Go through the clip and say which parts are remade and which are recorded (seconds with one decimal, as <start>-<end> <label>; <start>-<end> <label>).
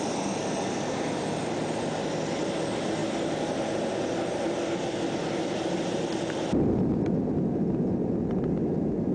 0.0-3.0 recorded; 3.0-7.7 remade; 7.7-9.1 recorded